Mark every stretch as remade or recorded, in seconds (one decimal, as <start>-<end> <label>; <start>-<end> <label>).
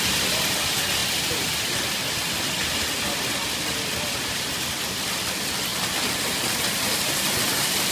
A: 0.0-7.9 recorded